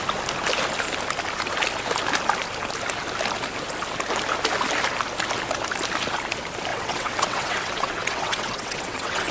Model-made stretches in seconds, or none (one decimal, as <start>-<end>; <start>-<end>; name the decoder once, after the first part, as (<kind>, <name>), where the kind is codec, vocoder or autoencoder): 6.7-9.3 (vocoder, WaveNeXt)